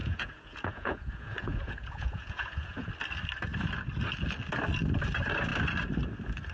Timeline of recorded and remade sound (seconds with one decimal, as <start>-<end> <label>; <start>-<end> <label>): 0.0-2.9 remade; 2.9-6.5 recorded